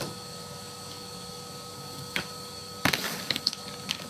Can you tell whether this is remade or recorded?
remade